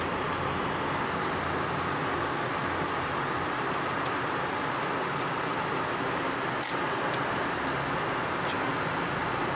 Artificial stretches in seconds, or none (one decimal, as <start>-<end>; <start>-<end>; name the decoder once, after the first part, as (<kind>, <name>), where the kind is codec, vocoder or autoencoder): none